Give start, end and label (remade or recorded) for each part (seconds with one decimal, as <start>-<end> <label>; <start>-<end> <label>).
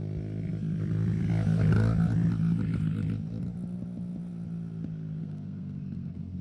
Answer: 0.0-5.2 recorded; 5.2-6.4 remade